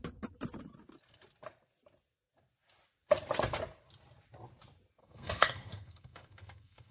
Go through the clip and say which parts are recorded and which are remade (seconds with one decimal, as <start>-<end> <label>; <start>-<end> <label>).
0.0-5.0 recorded; 5.0-6.9 remade